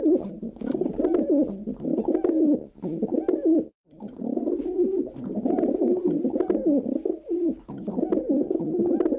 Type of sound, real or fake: real